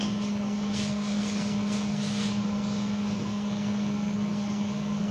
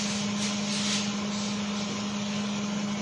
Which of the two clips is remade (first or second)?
first